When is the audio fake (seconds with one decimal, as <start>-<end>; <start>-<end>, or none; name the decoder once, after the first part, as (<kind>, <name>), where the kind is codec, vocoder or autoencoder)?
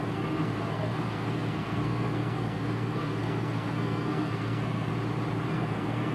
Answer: 0.0-4.9 (codec, SNAC); 5.5-6.1